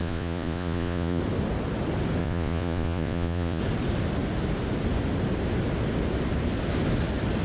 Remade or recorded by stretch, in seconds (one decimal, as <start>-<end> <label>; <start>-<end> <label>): 0.0-1.2 remade; 1.2-2.2 recorded; 2.2-3.6 remade; 3.6-7.4 recorded